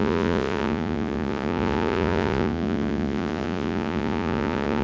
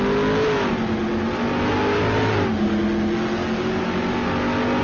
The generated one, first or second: first